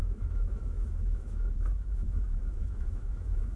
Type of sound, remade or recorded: remade